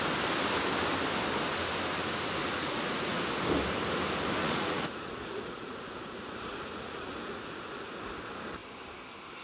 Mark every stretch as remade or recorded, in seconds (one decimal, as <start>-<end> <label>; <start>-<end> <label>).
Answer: 0.0-2.4 recorded; 2.4-3.2 remade; 3.2-4.4 recorded; 4.4-7.9 remade; 7.9-9.4 recorded